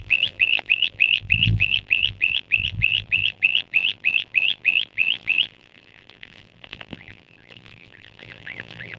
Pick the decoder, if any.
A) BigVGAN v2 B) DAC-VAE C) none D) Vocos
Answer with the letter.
A